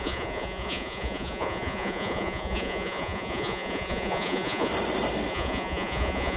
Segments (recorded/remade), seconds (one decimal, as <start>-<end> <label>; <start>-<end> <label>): 0.0-4.7 remade; 4.7-5.3 recorded; 5.3-6.4 remade